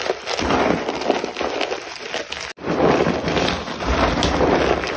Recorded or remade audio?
recorded